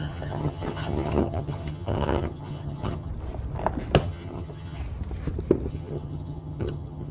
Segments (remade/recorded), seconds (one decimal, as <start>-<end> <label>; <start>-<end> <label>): 0.0-3.1 remade; 3.1-4.0 recorded; 4.0-4.8 remade; 4.8-5.7 recorded; 5.7-7.1 remade